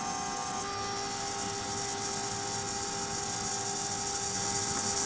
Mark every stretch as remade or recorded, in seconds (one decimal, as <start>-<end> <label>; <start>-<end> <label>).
0.0-5.1 recorded